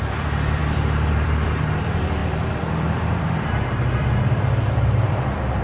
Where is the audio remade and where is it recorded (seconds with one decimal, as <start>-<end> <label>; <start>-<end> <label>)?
0.0-5.6 remade